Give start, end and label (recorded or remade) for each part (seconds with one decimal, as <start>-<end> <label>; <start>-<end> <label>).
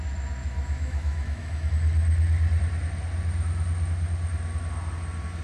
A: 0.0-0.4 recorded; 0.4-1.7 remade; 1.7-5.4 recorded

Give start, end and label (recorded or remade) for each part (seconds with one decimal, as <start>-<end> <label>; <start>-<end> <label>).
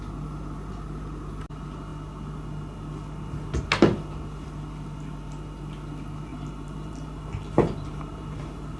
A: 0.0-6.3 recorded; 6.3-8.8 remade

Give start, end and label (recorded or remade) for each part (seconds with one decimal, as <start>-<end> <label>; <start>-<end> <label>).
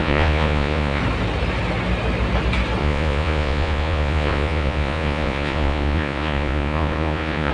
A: 0.0-1.0 remade; 1.0-2.8 recorded; 2.8-7.5 remade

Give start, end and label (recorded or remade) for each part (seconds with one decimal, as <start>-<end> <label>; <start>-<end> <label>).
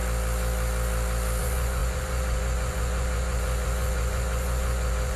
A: 0.0-1.4 recorded; 1.4-5.2 remade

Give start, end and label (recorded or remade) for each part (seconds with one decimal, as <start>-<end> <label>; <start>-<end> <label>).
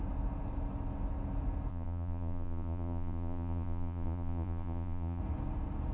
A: 0.0-1.7 recorded; 1.7-5.2 remade; 5.2-5.9 recorded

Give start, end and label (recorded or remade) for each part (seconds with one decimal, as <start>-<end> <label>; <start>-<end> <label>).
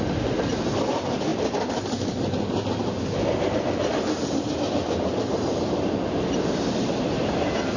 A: 0.0-7.8 recorded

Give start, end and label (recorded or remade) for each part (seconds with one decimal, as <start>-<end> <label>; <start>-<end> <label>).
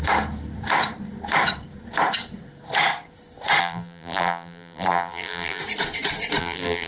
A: 0.0-3.6 recorded; 3.6-5.6 remade; 5.6-6.4 recorded; 6.4-6.9 remade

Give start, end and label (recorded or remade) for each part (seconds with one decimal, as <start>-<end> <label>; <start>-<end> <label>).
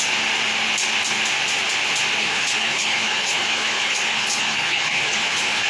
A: 0.0-2.2 recorded; 2.2-5.7 remade